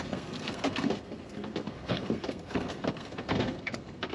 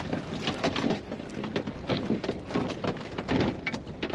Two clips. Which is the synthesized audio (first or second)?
first